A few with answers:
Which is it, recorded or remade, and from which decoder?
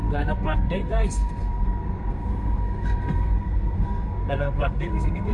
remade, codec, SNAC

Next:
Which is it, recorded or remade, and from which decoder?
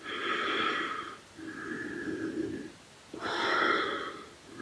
recorded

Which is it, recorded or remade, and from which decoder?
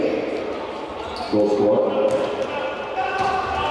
recorded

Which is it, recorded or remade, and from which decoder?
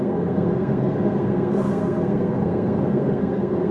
remade, codec, SNAC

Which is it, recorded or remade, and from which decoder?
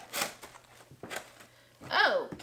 recorded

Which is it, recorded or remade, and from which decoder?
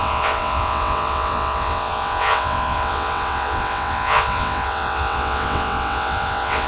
remade, vocoder, WaveNeXt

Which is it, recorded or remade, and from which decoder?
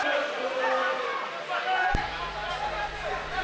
recorded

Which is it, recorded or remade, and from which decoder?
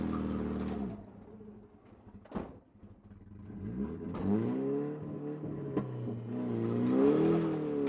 recorded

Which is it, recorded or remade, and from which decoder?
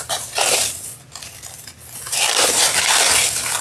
remade, vocoder, BigVGAN v2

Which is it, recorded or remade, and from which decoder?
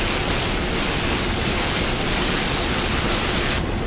remade, vocoder, BigVGAN v2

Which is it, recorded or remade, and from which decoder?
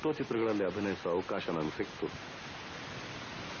recorded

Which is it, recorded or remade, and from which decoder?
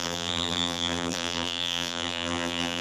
remade, vocoder, BigVGAN v2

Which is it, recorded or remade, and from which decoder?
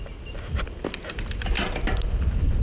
recorded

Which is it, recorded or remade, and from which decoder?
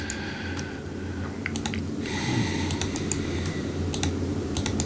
recorded